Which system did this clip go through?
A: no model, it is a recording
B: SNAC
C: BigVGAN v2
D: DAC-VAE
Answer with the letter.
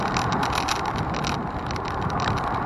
A